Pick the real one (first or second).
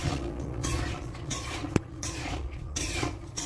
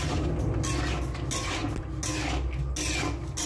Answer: second